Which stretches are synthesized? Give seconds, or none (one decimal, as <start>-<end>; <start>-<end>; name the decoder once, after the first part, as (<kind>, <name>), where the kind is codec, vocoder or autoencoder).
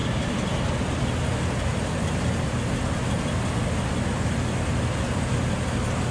none